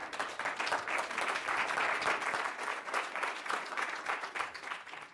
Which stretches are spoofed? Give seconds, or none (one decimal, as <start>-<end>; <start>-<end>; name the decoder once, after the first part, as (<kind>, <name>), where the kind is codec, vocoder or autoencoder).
2.7-4.0 (vocoder, Vocos)